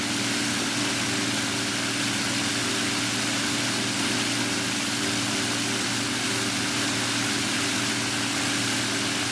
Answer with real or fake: real